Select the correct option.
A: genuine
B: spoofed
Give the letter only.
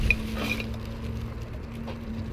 A